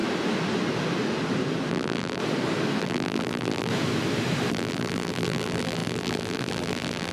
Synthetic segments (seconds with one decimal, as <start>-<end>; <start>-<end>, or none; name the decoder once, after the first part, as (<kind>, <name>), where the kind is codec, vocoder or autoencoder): 1.7-2.2 (vocoder, BigVGAN v2); 2.8-3.7; 4.5-7.1